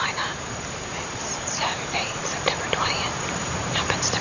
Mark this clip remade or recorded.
remade